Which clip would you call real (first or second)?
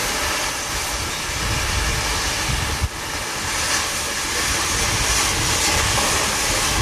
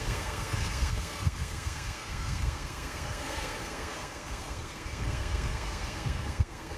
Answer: first